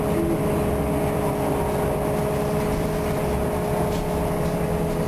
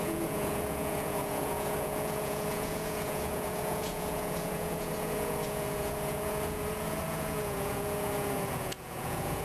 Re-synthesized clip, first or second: second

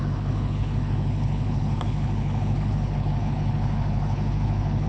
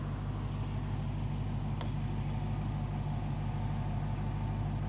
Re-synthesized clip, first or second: first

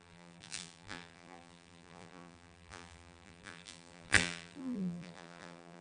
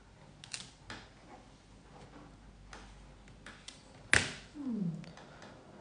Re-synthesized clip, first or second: first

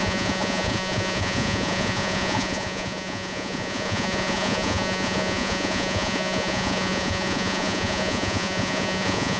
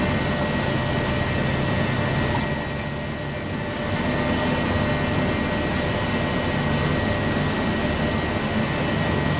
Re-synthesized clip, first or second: first